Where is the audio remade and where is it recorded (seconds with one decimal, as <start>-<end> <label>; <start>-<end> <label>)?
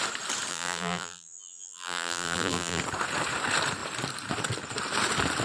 0.0-0.5 recorded; 0.5-2.8 remade; 2.8-5.4 recorded